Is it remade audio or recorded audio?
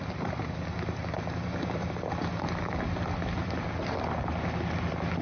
recorded